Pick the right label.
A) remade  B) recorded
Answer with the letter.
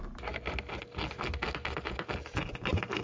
B